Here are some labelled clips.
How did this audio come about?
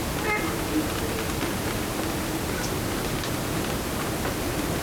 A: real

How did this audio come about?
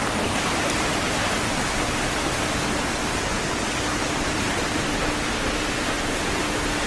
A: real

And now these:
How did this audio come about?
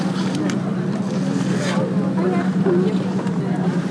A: real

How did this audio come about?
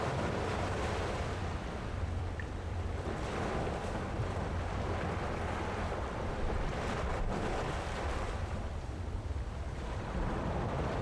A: fake